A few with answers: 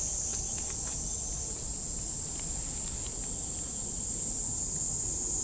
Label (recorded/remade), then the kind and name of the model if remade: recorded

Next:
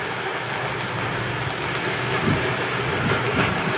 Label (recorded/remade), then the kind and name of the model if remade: recorded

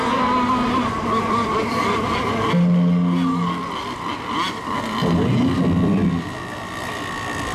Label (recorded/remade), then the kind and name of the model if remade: recorded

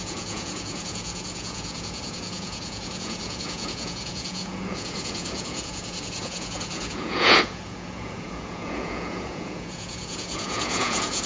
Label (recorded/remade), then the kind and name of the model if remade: remade, vocoder, Vocos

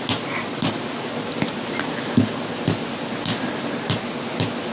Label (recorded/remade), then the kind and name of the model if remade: recorded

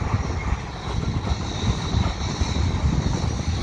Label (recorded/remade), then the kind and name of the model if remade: recorded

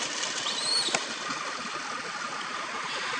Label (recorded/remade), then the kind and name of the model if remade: recorded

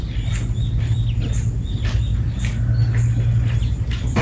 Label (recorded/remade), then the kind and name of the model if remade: recorded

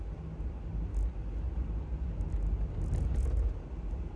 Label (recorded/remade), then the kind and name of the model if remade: recorded